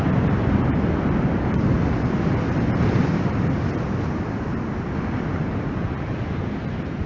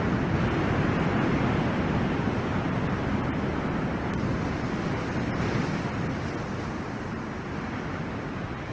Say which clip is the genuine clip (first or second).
second